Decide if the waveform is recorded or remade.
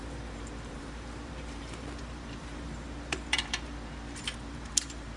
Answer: remade